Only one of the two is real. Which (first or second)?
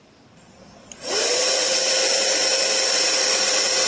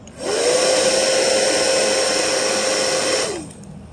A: second